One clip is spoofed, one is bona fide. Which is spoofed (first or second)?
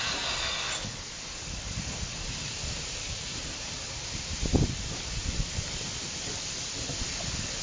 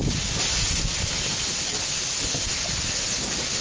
first